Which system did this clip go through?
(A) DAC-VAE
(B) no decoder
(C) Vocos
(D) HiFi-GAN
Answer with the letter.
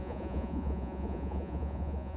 C